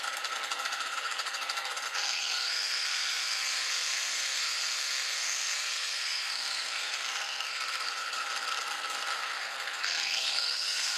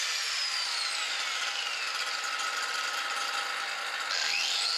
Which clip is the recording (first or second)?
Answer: second